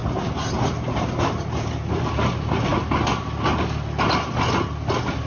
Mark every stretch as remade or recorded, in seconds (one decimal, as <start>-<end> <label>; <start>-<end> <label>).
0.0-5.3 recorded